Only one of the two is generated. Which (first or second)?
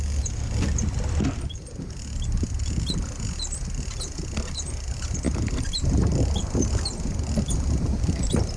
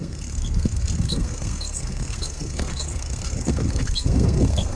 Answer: second